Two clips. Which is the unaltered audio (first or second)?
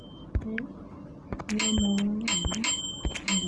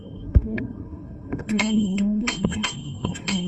first